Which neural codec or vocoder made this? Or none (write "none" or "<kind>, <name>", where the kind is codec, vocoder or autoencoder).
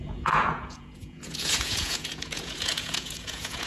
vocoder, Vocos